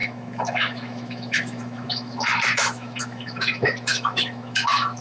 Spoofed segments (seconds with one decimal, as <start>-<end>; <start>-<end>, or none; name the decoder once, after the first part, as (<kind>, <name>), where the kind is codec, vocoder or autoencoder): 0.0-5.0 (autoencoder, DAC-VAE)